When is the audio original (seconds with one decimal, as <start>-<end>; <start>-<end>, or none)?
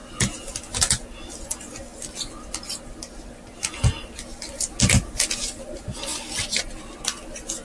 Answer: 0.0-7.6